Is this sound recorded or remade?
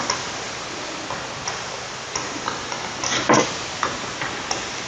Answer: recorded